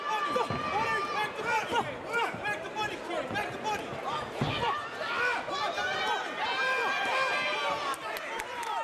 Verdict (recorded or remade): recorded